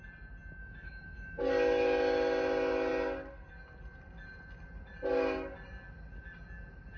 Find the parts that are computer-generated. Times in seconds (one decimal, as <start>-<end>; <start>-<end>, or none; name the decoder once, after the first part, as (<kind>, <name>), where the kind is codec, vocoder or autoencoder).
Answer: 0.6-1.4 (autoencoder, DAC-VAE)